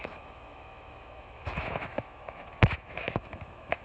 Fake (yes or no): yes